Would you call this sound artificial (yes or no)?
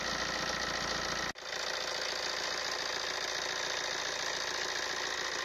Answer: no